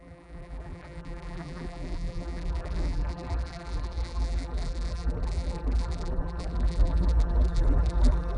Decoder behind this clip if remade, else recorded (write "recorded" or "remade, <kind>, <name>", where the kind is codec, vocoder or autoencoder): remade, vocoder, BigVGAN v2